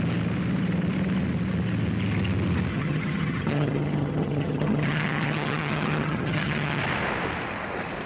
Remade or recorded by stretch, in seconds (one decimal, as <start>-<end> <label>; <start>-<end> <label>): 0.0-2.7 recorded; 2.7-6.8 remade; 6.8-8.1 recorded